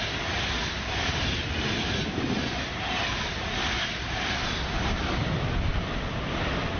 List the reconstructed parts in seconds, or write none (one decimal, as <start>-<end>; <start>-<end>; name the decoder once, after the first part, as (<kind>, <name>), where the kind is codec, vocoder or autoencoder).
1.0-4.2 (vocoder, BigVGAN v2)